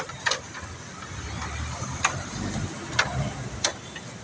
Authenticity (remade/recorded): recorded